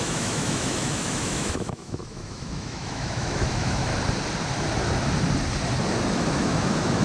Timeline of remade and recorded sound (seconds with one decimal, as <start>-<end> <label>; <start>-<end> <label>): 0.0-3.9 remade; 3.9-6.1 recorded; 6.1-7.0 remade